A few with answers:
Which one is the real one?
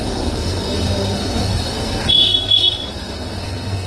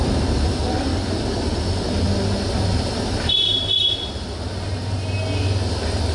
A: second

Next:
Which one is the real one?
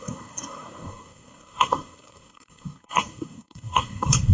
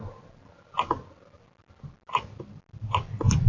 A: second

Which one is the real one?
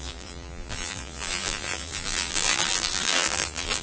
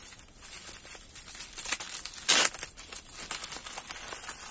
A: second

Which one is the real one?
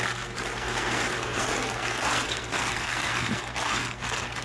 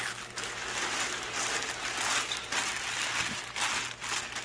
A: second